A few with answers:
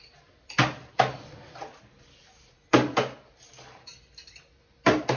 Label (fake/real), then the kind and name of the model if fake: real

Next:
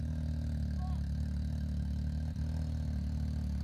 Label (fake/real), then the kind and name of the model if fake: real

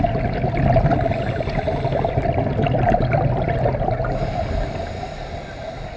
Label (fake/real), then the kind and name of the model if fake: real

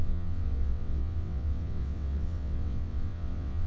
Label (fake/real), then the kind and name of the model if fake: fake, vocoder, WaveNeXt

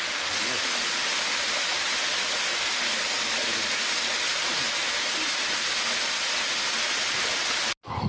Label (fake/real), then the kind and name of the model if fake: real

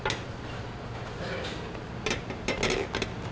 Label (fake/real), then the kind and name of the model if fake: real